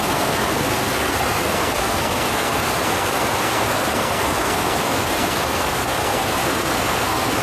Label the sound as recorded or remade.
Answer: remade